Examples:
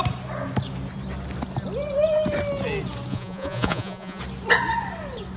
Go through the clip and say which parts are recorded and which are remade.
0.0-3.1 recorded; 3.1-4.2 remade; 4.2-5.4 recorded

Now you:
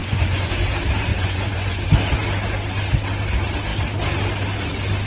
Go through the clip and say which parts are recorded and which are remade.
0.0-0.7 remade; 0.7-1.1 recorded; 1.1-1.8 remade; 1.8-5.1 recorded

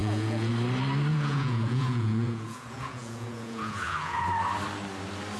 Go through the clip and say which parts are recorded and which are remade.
0.0-0.5 remade; 0.5-1.1 recorded; 1.1-4.3 remade; 4.3-5.4 recorded

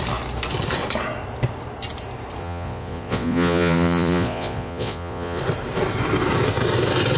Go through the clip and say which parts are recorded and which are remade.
0.0-2.4 recorded; 2.4-5.4 remade; 5.4-7.2 recorded

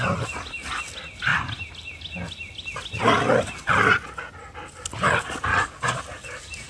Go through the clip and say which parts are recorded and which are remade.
0.0-5.5 recorded; 5.5-6.0 remade; 6.0-6.7 recorded